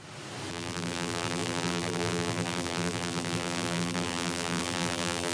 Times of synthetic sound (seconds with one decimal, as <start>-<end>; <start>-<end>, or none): 0.5-5.3